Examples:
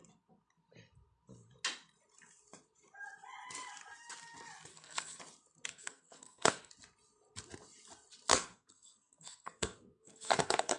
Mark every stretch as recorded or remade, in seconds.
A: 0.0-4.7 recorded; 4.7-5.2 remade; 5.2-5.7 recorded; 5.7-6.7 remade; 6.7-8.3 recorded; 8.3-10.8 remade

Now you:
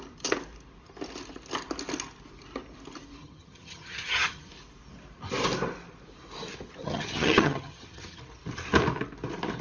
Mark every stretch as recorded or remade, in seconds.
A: 0.0-3.2 recorded; 3.2-4.5 remade; 4.5-6.8 recorded; 6.8-8.2 remade; 8.2-9.6 recorded

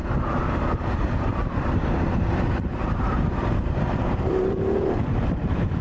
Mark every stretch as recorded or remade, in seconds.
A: 0.0-5.8 remade

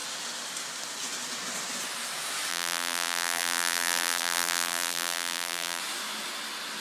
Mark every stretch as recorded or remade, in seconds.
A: 0.0-2.5 recorded; 2.5-5.8 remade; 5.8-6.8 recorded

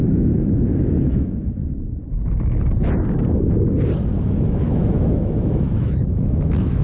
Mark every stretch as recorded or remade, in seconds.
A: 0.0-1.6 remade; 1.6-4.2 recorded; 4.2-6.8 remade

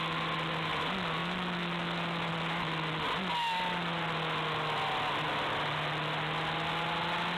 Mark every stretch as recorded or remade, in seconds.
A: 0.0-7.4 recorded

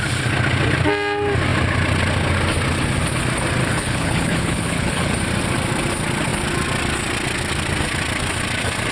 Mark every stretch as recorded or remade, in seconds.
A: 0.0-3.6 recorded; 3.6-5.1 remade; 5.1-8.9 recorded